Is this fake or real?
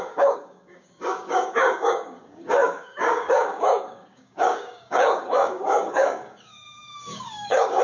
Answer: fake